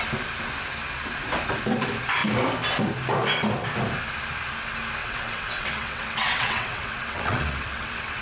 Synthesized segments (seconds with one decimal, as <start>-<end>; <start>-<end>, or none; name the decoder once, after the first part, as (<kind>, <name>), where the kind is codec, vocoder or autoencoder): 5.0-8.2 (vocoder, WaveNeXt)